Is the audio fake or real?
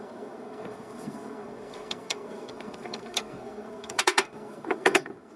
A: fake